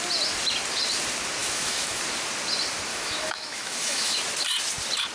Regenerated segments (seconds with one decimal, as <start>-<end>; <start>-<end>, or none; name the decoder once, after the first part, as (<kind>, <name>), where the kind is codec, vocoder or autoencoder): 1.4-2.0 (autoencoder, DAC-VAE); 2.9-4.2